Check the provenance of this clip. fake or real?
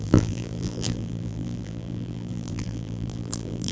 fake